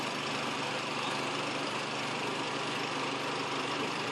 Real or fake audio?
fake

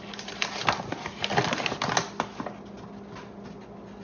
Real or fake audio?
real